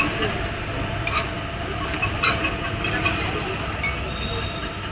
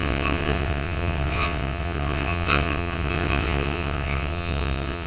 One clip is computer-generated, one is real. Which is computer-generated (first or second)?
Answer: second